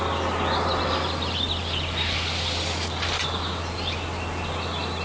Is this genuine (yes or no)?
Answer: yes